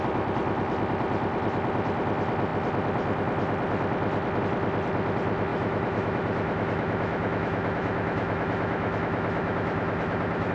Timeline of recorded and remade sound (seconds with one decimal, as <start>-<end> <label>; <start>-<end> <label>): 0.0-5.5 recorded; 5.5-10.5 remade